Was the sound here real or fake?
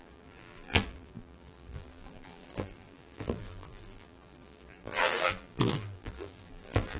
fake